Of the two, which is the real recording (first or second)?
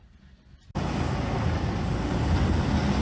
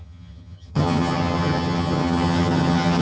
first